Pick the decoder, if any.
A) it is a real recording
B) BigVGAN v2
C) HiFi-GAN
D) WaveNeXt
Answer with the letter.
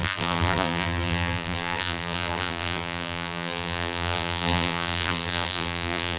B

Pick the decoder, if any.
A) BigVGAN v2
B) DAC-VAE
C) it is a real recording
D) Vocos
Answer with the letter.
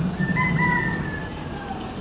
C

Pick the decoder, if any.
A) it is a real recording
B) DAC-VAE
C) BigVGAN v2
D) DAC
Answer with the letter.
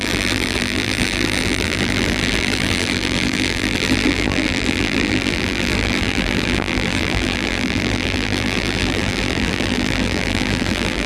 C